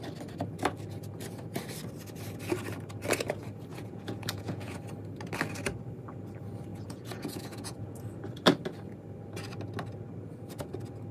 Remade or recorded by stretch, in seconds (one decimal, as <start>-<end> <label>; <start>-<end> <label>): 0.0-3.7 recorded; 3.7-4.8 remade; 4.8-6.7 recorded; 6.7-8.1 remade; 8.1-11.1 recorded